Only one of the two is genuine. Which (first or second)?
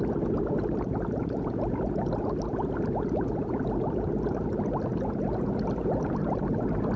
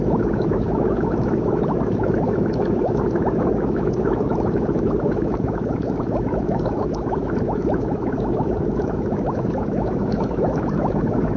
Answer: first